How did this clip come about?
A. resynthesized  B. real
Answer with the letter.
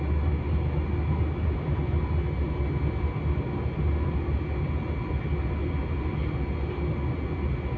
B